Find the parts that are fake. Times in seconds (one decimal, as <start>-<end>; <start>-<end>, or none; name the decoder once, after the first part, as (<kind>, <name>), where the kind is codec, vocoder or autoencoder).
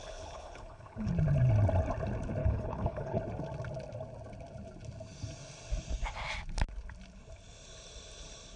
0.0-1.1 (codec, HILCodec); 2.4-3.2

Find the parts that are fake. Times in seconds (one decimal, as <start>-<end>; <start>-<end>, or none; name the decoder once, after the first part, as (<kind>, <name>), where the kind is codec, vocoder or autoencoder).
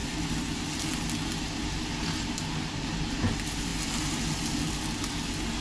none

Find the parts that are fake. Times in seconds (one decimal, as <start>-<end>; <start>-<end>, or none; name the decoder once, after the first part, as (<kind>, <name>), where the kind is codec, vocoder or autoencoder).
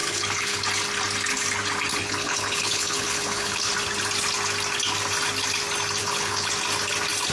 0.0-0.6 (codec, HILCodec); 1.9-3.7; 6.0-6.5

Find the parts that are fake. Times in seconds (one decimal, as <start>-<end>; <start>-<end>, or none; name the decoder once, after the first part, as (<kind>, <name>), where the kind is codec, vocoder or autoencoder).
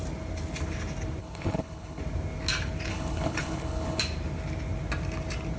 1.2-2.0 (codec, HILCodec); 2.9-4.0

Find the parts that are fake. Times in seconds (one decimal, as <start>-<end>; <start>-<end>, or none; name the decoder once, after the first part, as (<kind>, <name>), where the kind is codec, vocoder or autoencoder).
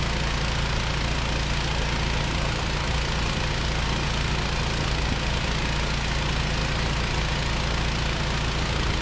none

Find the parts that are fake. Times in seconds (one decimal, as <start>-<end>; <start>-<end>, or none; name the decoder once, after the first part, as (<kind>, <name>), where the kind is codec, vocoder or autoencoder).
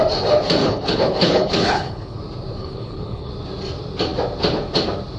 0.6-2.2 (codec, HILCodec); 2.6-3.3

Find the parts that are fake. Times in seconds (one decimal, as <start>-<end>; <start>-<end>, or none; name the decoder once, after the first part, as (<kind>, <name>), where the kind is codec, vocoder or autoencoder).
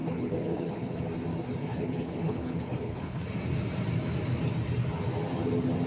0.0-1.0 (codec, HILCodec); 1.6-3.2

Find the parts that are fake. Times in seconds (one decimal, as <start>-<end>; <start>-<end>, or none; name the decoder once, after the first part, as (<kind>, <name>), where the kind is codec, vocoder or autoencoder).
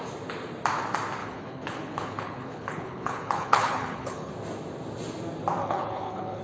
1.2-4.3 (codec, HILCodec); 5.6-6.4